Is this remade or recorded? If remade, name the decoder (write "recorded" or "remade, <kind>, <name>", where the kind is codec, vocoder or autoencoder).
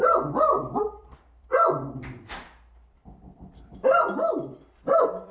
recorded